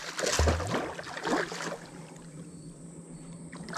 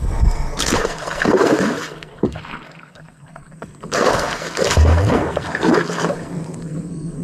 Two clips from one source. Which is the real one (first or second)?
first